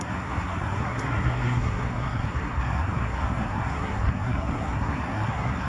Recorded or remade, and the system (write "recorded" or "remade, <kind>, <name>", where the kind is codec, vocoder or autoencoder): remade, codec, SNAC